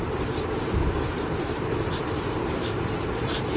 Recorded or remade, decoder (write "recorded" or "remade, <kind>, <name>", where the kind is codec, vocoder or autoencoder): remade, vocoder, BigVGAN v2